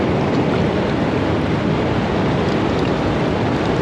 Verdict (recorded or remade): recorded